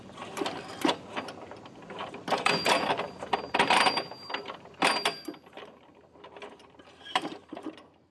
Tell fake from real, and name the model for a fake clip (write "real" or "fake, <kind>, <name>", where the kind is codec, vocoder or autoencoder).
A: fake, vocoder, BigVGAN v2